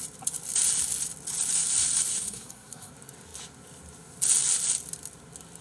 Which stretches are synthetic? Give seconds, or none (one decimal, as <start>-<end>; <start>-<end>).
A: 2.1-2.9